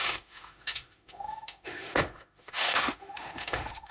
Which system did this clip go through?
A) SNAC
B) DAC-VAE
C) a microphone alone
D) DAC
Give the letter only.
B